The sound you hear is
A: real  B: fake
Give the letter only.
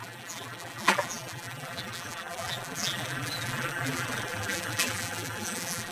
B